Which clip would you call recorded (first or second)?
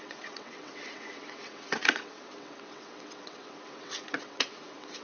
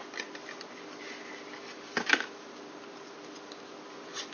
second